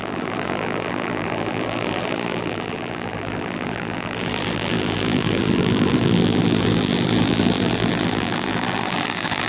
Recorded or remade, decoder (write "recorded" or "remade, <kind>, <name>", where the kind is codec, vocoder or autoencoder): remade, vocoder, BigVGAN v2